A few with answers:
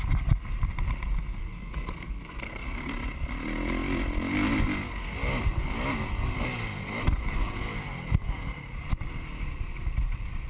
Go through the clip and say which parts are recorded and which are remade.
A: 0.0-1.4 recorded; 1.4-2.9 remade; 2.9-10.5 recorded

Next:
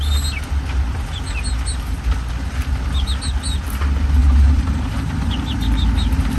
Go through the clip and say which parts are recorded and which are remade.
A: 0.0-4.2 recorded; 4.2-5.3 remade; 5.3-6.4 recorded